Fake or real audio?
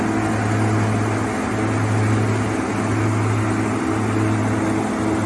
real